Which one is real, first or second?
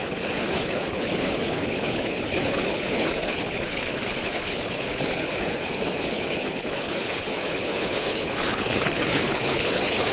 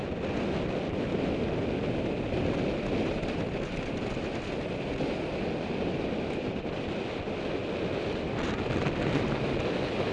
second